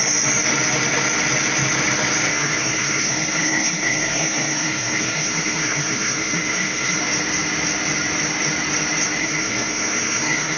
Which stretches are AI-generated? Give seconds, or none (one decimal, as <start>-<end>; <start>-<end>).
2.3-7.0; 9.2-10.6

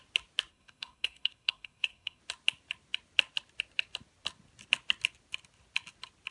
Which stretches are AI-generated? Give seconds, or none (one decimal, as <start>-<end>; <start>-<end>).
0.5-2.2